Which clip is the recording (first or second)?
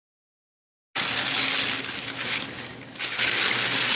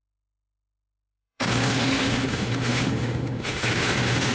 first